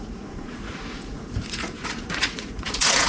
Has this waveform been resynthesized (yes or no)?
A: yes